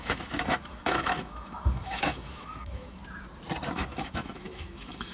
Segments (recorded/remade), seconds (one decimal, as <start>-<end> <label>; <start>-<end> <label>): 0.0-3.0 remade; 3.0-3.7 recorded; 3.7-5.1 remade